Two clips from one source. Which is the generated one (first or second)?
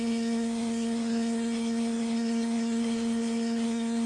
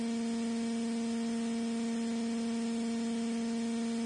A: first